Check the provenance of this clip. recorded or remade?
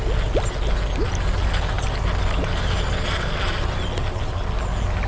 recorded